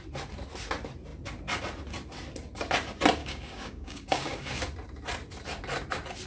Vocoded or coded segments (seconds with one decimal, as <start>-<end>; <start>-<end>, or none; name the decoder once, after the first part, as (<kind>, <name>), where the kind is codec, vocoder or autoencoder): 3.2-4.6 (codec, DAC)